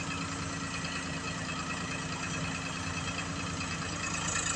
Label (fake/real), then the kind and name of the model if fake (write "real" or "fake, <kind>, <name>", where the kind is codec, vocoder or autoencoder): real